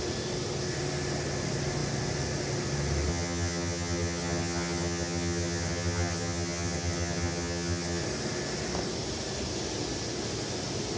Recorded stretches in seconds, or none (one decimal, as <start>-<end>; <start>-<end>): 0.0-3.1; 8.0-11.0